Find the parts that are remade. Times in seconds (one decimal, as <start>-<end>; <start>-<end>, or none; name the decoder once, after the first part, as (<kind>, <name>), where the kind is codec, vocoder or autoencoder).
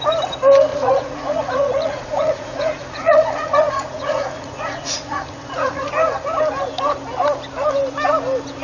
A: 0.7-5.9 (vocoder, Vocos)